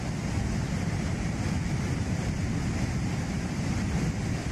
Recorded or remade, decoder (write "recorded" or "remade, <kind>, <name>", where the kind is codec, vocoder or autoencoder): recorded